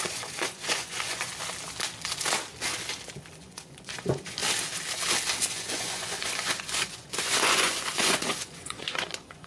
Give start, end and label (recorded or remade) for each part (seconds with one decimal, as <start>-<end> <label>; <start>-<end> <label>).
0.0-1.3 remade; 1.3-3.3 recorded; 3.3-4.4 remade; 4.4-5.5 recorded; 5.5-9.5 remade